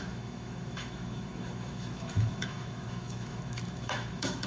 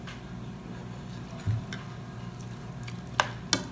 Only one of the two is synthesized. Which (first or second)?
first